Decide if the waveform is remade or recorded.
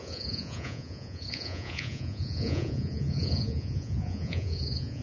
remade